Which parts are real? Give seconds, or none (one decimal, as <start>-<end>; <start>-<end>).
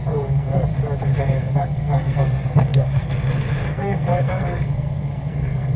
0.7-1.2